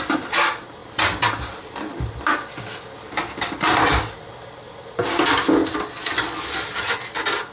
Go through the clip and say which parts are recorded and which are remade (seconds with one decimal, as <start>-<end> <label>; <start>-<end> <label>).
0.0-0.8 recorded; 0.8-2.8 remade; 2.8-5.6 recorded; 5.6-6.6 remade; 6.6-7.5 recorded